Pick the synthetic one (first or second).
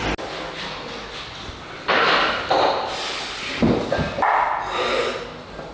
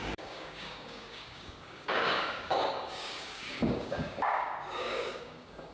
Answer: second